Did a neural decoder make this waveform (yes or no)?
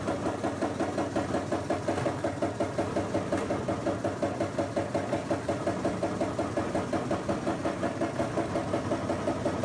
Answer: no